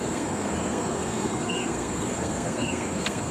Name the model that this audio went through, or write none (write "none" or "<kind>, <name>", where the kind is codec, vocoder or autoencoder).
codec, SNAC